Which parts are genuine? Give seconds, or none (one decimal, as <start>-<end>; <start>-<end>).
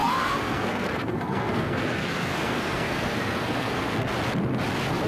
4.1-5.1